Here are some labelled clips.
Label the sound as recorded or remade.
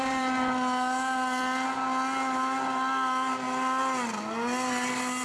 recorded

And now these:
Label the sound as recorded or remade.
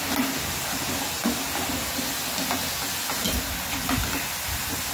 recorded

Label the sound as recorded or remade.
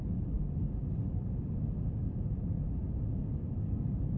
recorded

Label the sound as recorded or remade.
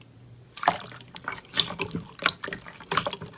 recorded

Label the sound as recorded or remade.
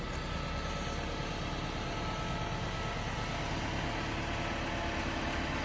recorded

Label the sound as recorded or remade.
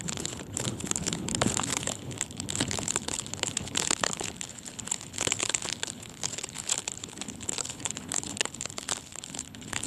remade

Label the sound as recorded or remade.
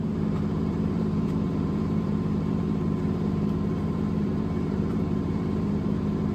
remade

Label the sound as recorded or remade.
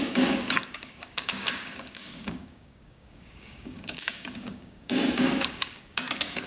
remade